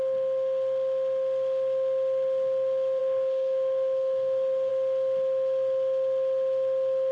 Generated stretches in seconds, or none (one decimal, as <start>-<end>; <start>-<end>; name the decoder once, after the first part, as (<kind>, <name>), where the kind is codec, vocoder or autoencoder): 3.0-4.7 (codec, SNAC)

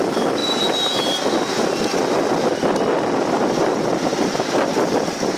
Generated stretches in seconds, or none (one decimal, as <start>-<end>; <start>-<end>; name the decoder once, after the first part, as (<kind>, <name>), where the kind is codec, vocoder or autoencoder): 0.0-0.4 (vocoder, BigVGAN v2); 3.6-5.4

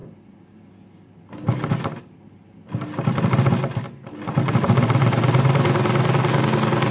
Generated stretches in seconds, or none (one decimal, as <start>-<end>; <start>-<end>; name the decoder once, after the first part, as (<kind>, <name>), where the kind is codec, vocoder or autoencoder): none

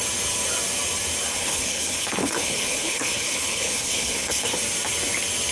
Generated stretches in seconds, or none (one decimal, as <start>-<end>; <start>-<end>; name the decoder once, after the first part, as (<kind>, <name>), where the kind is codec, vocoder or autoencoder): 1.3-4.6 (codec, HILCodec)

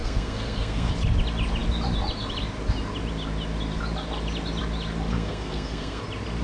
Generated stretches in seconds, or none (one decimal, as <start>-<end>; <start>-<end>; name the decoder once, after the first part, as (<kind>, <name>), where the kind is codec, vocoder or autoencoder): 0.0-0.9 (codec, SNAC); 5.1-6.0